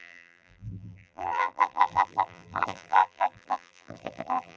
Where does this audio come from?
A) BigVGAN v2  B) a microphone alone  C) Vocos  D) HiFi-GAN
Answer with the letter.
A